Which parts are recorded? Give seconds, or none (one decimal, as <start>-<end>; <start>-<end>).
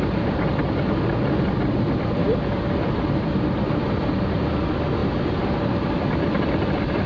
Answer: 0.0-2.2; 3.3-7.1